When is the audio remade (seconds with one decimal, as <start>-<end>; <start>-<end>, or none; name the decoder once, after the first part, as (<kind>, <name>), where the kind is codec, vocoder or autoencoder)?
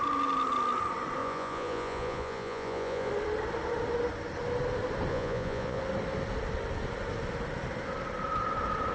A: 1.2-3.1 (vocoder, Vocos); 5.1-5.8